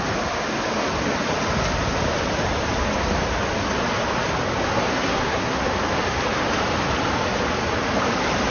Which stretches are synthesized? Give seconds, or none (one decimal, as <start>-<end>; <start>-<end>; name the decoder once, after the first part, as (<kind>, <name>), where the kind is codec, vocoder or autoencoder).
4.9-5.6 (codec, SNAC)